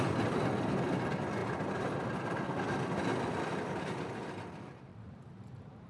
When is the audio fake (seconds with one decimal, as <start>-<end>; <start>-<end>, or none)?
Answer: 4.9-5.9